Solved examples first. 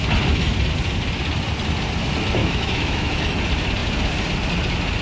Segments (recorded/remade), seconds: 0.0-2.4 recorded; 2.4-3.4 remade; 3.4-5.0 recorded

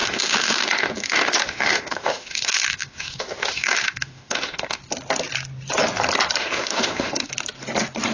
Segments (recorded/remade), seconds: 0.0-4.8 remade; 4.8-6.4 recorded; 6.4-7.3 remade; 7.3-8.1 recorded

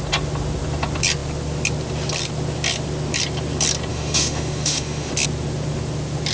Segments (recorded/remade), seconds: 0.0-3.9 recorded; 3.9-5.1 remade; 5.1-6.3 recorded

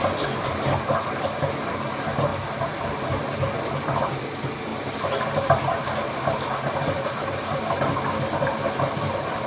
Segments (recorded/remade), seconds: 0.0-9.5 recorded

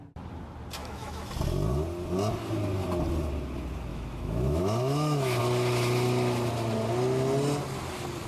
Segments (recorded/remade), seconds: 0.0-0.8 recorded; 0.8-1.3 remade; 1.3-3.9 recorded; 3.9-5.4 remade; 5.4-8.3 recorded